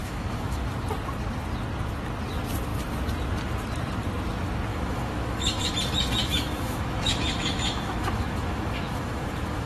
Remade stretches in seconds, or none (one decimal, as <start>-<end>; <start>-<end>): 0.0-0.6; 4.7-5.7; 6.2-9.7